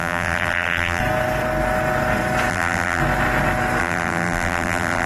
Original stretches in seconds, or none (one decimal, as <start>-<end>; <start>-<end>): 1.0-2.5; 3.0-3.8